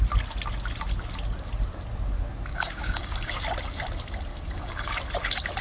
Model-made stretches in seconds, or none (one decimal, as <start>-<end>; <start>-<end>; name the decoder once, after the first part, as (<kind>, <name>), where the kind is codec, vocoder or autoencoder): 2.5-3.4 (codec, DAC); 4.3-5.0